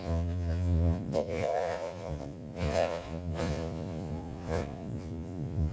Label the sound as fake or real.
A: fake